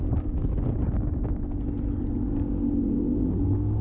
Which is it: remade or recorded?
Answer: recorded